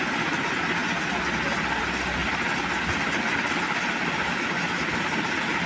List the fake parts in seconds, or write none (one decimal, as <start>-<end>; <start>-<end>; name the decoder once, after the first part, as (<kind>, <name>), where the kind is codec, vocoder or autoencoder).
none